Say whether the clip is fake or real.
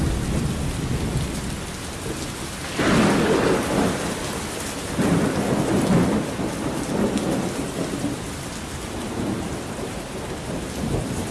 real